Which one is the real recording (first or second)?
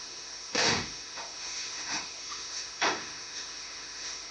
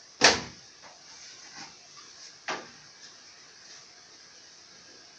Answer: second